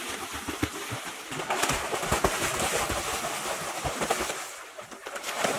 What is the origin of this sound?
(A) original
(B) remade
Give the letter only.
A